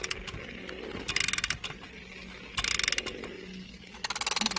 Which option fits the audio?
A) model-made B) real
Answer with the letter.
B